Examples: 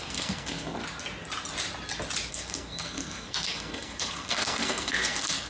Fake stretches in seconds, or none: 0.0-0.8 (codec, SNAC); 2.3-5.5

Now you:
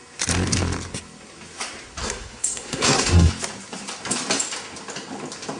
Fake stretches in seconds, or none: 2.0-3.3 (codec, SNAC)

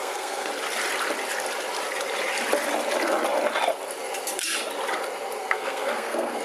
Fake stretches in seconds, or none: 0.0-0.5 (codec, SNAC); 5.4-6.4

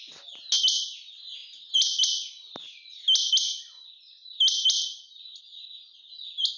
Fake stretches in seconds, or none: none

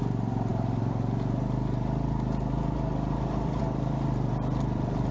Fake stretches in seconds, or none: none